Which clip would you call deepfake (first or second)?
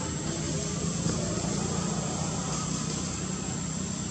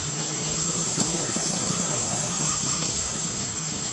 second